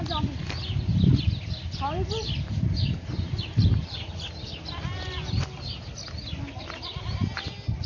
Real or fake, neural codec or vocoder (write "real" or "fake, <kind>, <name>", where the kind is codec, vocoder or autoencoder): real